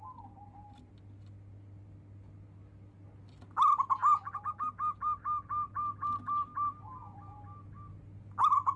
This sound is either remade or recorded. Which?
recorded